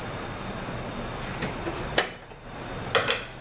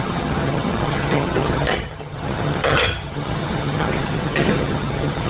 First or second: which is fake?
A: second